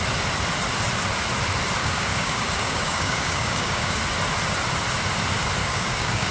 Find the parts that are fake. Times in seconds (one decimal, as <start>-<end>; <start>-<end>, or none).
1.8-4.0; 5.6-6.3